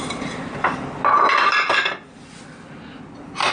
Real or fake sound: real